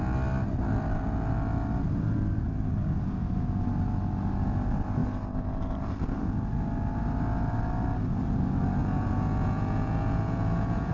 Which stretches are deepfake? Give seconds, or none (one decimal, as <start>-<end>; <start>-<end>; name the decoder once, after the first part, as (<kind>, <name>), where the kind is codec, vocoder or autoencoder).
8.8-10.9 (vocoder, Vocos)